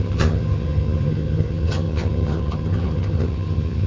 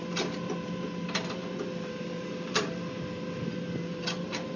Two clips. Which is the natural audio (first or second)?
second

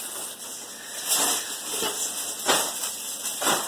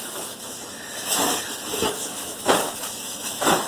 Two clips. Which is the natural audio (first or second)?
first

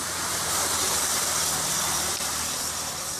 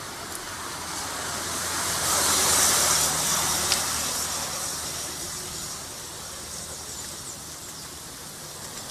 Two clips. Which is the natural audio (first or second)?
second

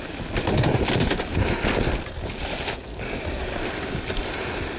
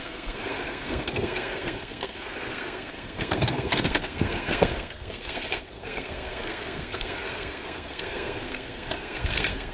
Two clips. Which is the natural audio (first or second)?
first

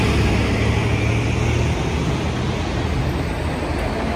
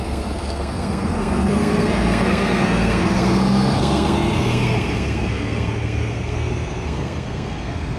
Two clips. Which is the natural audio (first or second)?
first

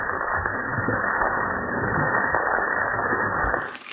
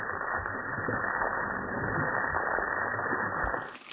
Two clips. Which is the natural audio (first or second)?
second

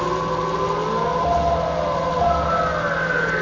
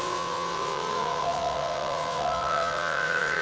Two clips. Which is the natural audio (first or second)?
first